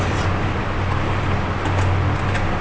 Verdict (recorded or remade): recorded